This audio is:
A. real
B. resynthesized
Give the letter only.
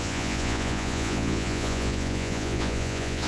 B